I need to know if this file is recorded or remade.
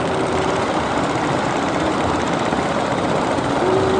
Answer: remade